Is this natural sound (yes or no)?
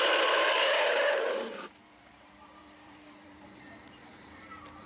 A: no